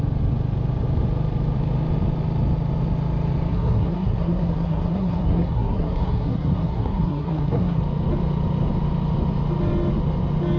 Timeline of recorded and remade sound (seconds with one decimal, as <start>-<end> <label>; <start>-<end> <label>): 0.0-3.5 recorded; 3.5-7.8 remade; 7.8-10.6 recorded